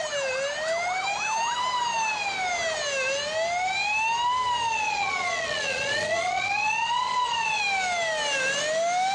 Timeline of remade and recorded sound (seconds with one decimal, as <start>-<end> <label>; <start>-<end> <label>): 0.0-4.7 recorded; 4.7-7.6 remade; 7.6-9.1 recorded